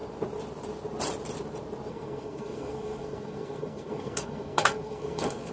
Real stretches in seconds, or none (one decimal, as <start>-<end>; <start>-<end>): 0.0-1.9

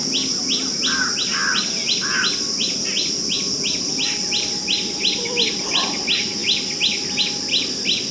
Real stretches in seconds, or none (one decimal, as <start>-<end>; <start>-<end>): 0.0-8.1